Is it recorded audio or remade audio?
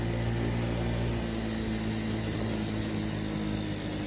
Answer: recorded